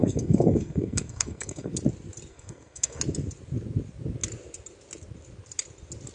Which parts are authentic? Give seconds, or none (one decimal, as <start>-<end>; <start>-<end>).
1.7-2.3; 3.0-6.1